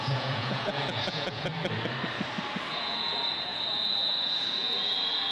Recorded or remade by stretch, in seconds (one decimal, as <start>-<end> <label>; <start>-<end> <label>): 0.0-1.5 remade; 1.5-2.7 recorded; 2.7-5.3 remade